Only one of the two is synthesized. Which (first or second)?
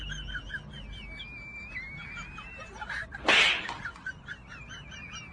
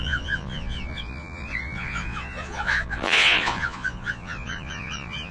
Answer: second